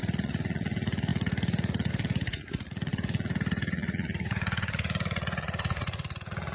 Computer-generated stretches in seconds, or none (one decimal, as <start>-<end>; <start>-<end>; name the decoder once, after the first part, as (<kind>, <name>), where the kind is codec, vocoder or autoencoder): 0.0-6.5 (vocoder, Vocos)